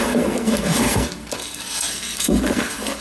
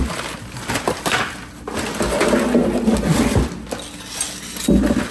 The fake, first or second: first